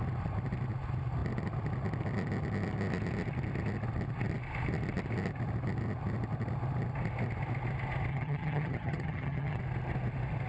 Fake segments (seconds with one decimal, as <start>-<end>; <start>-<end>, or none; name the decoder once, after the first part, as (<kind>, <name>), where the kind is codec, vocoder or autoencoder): 8.1-9.6 (vocoder, HiFi-GAN)